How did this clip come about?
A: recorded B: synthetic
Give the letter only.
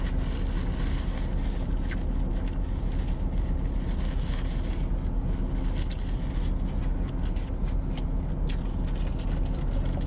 A